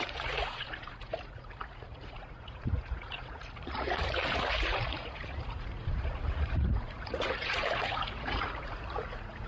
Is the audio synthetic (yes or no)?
yes